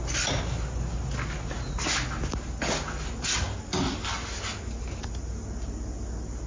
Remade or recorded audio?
recorded